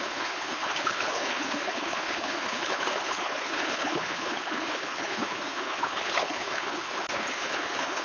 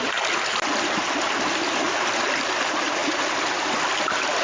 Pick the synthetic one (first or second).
first